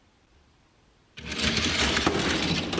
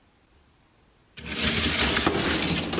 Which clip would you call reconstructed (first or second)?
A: first